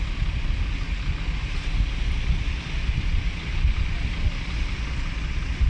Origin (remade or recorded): recorded